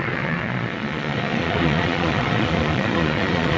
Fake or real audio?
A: fake